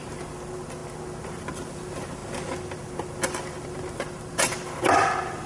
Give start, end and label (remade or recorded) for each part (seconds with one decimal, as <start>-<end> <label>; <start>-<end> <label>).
0.0-0.8 remade; 0.8-1.5 recorded; 1.5-5.5 remade